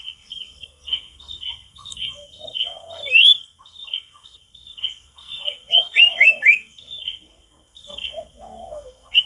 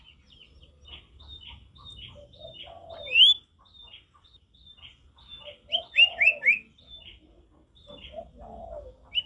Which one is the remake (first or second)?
first